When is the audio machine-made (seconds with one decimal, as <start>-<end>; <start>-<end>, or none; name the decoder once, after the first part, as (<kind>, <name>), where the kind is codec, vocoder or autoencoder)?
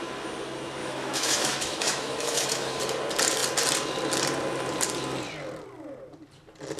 0.8-2.8 (autoencoder, DAC-VAE)